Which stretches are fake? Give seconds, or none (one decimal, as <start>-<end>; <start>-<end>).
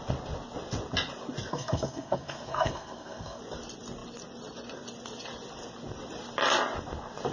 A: 1.5-3.4